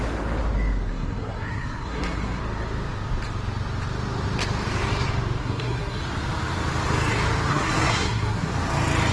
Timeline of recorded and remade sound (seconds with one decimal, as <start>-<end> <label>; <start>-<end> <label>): 0.0-0.9 recorded; 0.9-2.4 remade; 2.4-5.4 recorded; 5.4-6.0 remade; 6.0-7.5 recorded; 7.5-8.5 remade; 8.5-9.1 recorded